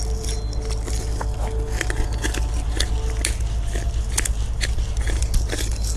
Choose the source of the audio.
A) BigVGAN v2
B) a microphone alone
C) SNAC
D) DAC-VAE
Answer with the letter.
B